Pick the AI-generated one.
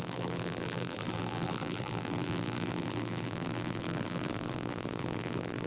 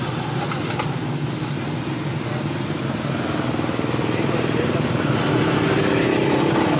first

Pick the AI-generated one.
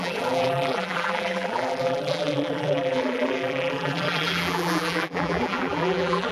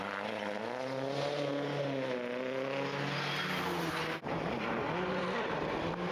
first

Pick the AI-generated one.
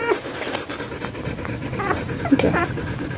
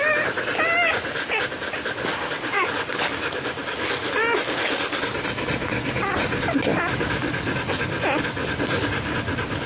first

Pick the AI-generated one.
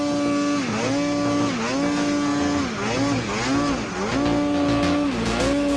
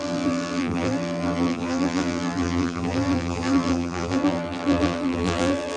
second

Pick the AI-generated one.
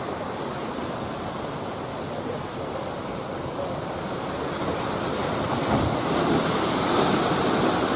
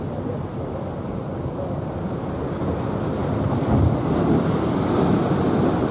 first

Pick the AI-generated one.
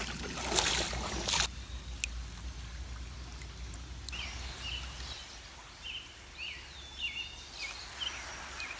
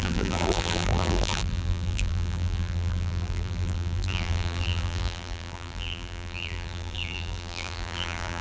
second